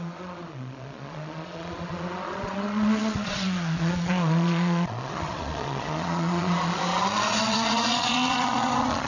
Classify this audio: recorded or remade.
remade